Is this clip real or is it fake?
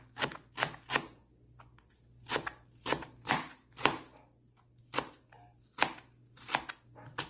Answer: real